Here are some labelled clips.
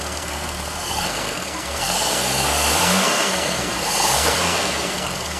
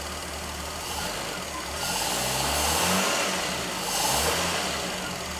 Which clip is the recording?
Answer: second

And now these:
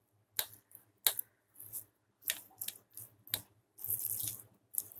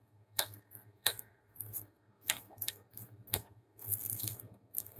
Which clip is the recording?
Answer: first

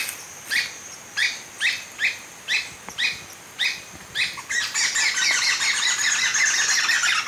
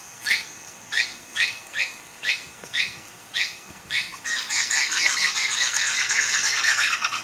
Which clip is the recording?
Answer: first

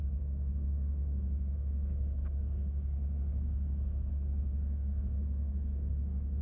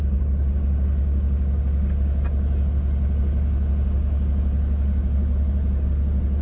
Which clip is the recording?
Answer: second